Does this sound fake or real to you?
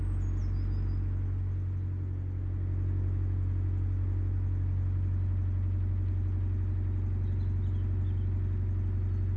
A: real